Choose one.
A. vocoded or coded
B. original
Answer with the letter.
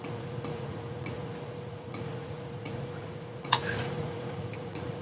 A